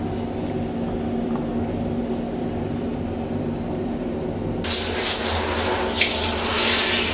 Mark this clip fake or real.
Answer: real